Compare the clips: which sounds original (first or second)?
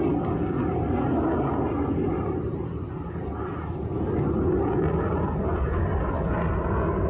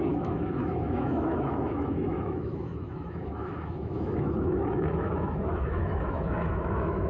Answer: first